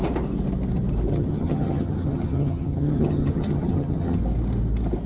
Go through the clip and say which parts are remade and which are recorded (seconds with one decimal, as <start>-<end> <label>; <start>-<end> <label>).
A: 0.0-1.1 recorded; 1.1-4.2 remade; 4.2-5.1 recorded